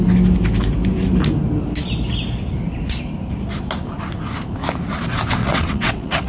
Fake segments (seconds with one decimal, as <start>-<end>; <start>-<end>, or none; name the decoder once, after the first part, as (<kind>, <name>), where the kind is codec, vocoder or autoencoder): 5.4-6.3 (vocoder, WaveNeXt)

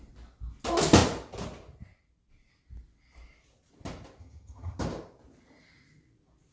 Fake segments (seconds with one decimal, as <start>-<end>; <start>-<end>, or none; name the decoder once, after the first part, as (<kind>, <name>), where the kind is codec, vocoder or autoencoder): 4.2-4.8 (vocoder, HiFi-GAN)

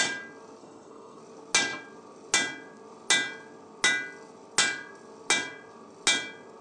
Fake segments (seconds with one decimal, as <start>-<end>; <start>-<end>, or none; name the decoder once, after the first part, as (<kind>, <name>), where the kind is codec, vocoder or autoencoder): 0.6-1.2 (codec, SNAC)